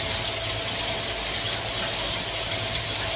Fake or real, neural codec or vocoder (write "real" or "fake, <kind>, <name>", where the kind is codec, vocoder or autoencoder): real